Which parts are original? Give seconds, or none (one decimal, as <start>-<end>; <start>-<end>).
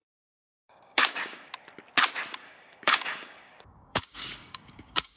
1.5-2.4